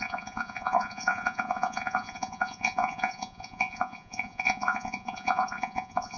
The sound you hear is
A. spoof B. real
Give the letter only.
A